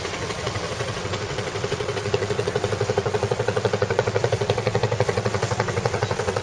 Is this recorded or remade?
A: remade